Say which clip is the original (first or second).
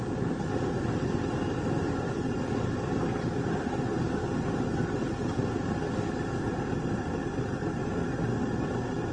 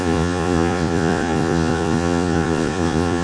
first